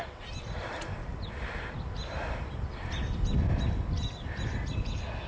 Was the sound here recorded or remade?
recorded